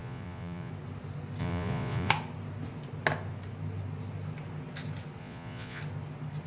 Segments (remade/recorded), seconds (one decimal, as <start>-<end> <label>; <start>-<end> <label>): 0.0-0.7 remade; 0.7-1.4 recorded; 1.4-2.1 remade; 2.1-5.2 recorded; 5.2-5.8 remade; 5.8-6.5 recorded